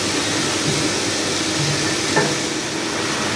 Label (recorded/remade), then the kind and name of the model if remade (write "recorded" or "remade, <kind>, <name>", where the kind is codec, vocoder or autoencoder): recorded